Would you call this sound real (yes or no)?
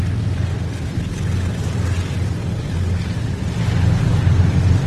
yes